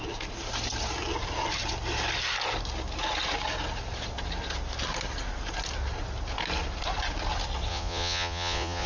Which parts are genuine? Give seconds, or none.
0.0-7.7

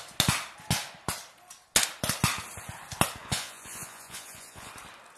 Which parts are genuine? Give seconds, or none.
0.0-3.2; 4.7-5.2

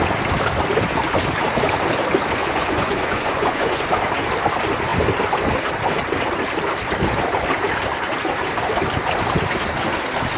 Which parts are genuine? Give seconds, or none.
0.0-2.4; 3.8-10.4

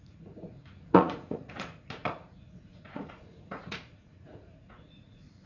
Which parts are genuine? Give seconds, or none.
none